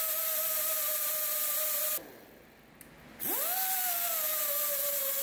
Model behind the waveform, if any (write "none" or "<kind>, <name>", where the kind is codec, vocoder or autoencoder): none